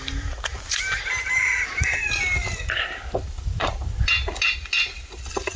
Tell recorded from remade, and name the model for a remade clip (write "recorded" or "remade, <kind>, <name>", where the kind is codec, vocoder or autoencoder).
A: recorded